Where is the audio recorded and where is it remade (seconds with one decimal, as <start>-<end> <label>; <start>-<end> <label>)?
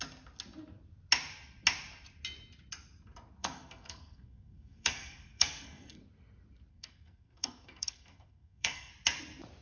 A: 0.0-3.4 recorded; 3.4-6.0 remade; 6.0-6.7 recorded; 6.7-8.9 remade; 8.9-9.6 recorded